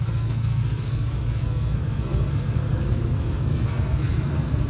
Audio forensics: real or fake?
fake